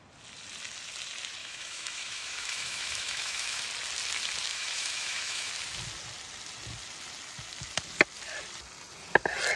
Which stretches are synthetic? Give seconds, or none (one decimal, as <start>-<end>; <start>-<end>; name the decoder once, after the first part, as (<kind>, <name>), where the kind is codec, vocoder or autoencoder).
1.4-3.6 (autoencoder, DAC-VAE); 4.5-5.5

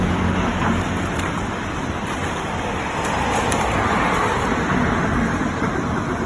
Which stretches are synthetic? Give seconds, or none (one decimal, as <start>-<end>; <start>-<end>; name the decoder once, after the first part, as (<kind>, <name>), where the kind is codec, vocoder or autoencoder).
0.0-0.5 (vocoder, BigVGAN v2); 1.1-2.2; 5.6-6.3